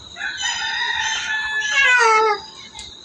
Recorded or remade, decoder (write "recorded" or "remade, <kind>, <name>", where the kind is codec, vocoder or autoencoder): recorded